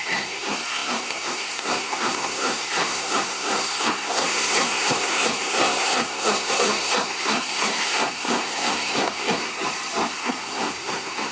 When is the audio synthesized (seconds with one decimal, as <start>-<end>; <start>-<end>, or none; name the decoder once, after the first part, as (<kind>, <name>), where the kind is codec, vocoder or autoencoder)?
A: 0.0-9.5 (codec, SNAC); 10.1-11.3